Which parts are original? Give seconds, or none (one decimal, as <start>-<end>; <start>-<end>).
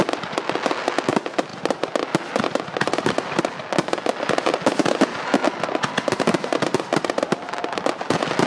0.0-8.5